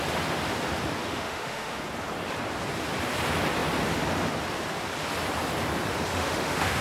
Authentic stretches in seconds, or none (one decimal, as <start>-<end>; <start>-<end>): 0.0-1.0; 1.8-6.1

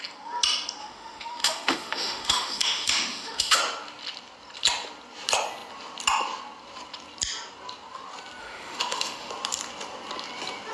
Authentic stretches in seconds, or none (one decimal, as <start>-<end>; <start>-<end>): 0.0-0.8; 3.6-8.4; 9.3-10.7

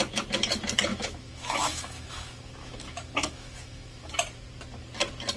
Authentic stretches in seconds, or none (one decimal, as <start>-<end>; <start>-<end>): 0.0-0.9; 4.1-5.4

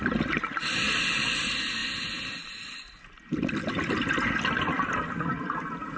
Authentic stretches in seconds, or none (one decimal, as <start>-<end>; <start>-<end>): 0.0-6.0

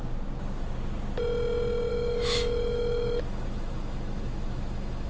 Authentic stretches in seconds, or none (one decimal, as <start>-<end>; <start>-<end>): 0.0-1.9